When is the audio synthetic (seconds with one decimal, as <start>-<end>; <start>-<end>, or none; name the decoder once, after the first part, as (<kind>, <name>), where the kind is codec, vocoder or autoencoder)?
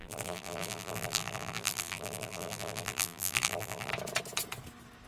0.0-3.9 (vocoder, BigVGAN v2)